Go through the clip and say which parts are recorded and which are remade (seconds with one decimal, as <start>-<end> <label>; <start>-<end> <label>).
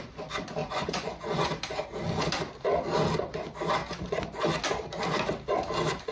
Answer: 0.0-0.6 recorded; 0.6-1.5 remade; 1.5-3.8 recorded; 3.8-4.4 remade; 4.4-6.1 recorded